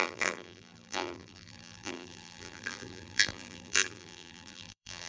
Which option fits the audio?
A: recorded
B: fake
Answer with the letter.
B